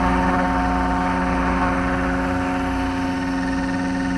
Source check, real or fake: real